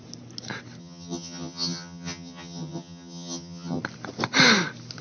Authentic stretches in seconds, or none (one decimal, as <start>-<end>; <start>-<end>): 0.0-0.8; 3.8-5.0